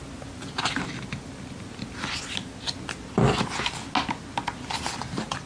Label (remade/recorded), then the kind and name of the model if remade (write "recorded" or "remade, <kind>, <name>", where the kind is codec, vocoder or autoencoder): recorded